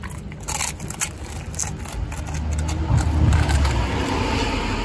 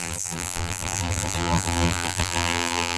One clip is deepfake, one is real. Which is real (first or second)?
first